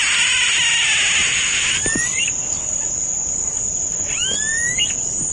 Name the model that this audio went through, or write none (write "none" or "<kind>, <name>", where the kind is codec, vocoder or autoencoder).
none